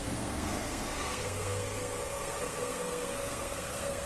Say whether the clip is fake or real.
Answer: fake